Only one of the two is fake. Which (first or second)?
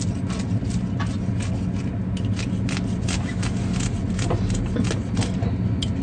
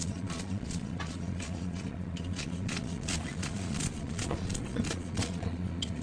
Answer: second